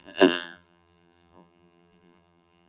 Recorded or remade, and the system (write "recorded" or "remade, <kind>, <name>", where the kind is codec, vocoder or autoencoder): remade, vocoder, BigVGAN v2